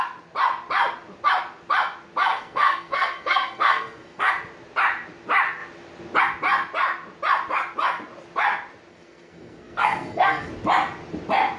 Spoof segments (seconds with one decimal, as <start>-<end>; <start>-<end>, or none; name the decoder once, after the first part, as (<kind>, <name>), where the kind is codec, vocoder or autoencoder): 2.3-4.3 (codec, SNAC); 8.9-10.5